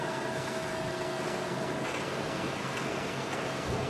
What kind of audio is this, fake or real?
fake